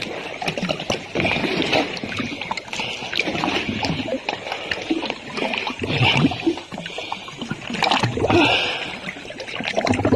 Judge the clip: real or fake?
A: real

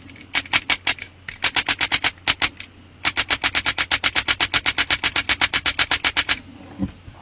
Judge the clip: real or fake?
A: real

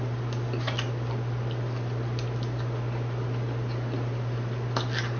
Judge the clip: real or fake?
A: real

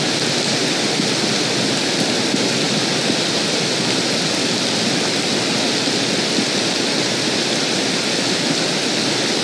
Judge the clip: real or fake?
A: real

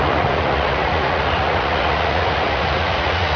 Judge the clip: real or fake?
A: fake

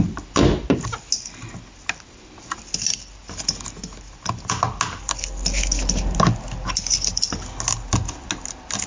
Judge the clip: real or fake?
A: real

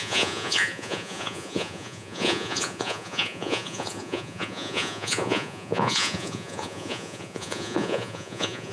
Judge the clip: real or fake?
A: fake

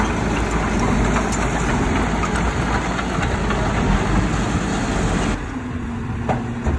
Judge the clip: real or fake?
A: real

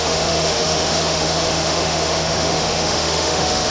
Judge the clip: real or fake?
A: fake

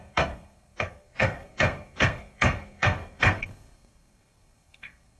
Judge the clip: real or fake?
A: fake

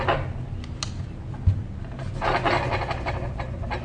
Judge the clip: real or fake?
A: real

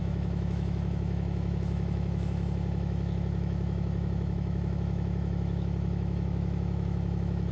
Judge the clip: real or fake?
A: fake